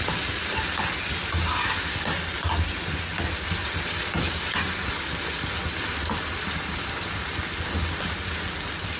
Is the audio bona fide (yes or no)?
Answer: yes